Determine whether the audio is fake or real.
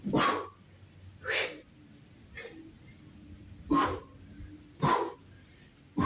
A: real